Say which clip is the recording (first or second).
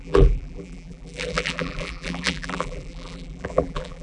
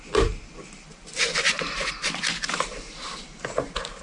second